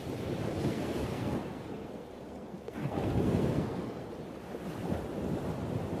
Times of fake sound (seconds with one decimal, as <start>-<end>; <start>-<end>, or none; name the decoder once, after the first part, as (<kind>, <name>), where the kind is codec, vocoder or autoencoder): 0.5-4.1 (codec, SNAC)